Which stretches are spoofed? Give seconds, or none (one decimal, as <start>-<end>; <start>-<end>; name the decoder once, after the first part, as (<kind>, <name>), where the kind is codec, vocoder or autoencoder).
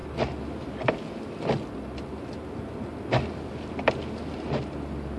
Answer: none